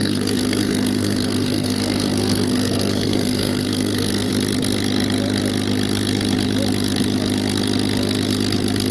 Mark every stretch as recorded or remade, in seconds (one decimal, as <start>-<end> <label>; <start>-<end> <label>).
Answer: 0.0-4.3 remade; 4.3-8.9 recorded